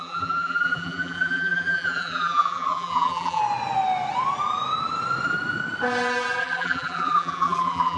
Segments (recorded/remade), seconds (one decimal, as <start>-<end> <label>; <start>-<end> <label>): 0.0-3.4 remade; 3.4-6.4 recorded; 6.4-8.0 remade